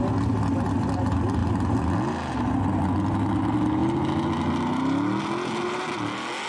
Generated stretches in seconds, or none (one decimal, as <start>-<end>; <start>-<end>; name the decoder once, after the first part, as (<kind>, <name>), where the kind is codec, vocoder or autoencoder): none